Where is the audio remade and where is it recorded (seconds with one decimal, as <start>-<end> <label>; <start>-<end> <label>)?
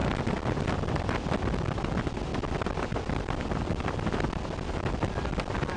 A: 0.0-5.8 recorded